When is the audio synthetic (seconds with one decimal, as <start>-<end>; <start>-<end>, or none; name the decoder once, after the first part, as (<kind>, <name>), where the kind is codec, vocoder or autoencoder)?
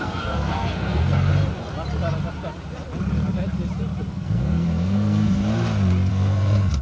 0.0-1.3 (codec, SNAC); 4.1-5.4; 6.1-6.8